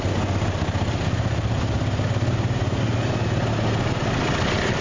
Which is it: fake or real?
real